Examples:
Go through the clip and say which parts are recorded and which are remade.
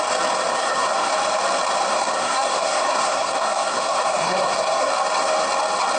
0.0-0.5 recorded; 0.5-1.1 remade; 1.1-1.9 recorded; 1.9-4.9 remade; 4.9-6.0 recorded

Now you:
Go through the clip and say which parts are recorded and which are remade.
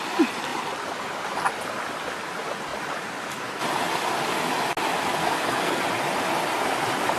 0.0-5.2 recorded; 5.2-5.8 remade; 5.8-7.2 recorded